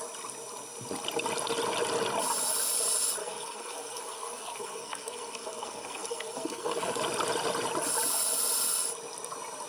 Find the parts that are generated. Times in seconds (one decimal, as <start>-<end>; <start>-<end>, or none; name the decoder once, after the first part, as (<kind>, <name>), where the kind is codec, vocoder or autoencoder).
3.2-7.0 (codec, SNAC)